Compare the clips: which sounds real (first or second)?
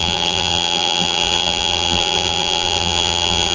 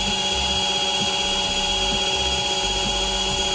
second